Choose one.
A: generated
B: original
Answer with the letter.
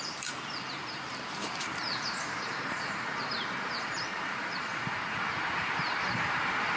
A